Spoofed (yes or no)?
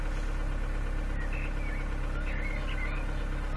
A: no